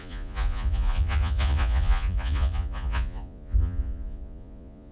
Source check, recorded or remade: remade